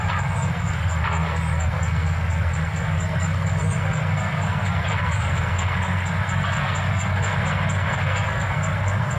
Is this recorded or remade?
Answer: remade